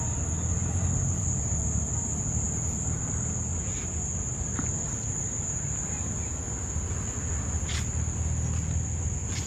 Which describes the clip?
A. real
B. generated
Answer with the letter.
A